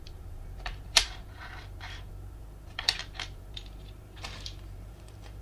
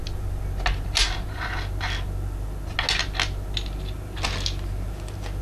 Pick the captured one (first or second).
second